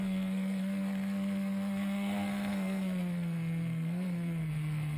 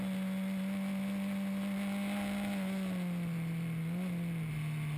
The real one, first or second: second